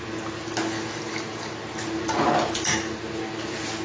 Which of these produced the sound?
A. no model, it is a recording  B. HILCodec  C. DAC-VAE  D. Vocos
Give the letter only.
A